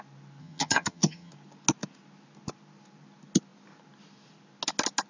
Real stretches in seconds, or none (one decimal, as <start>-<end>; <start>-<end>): 0.0-0.4; 1.3-5.1